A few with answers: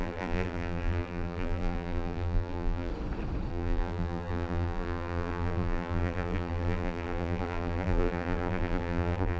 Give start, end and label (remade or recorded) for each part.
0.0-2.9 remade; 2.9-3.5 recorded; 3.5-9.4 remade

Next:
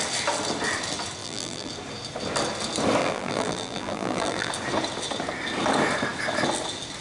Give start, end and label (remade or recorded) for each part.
0.0-1.2 recorded; 1.2-1.7 remade; 1.7-3.0 recorded; 3.0-4.5 remade; 4.5-7.0 recorded

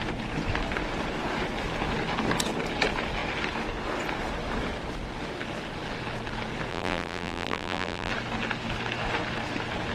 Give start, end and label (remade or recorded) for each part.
0.0-6.7 recorded; 6.7-8.1 remade; 8.1-9.9 recorded

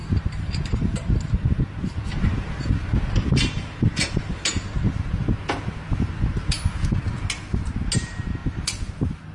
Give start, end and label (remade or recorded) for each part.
0.0-2.1 remade; 2.1-9.3 recorded